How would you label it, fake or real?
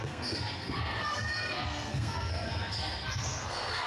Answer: fake